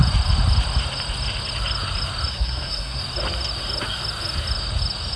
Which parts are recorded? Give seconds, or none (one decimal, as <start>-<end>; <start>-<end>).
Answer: 0.0-2.3; 3.0-5.2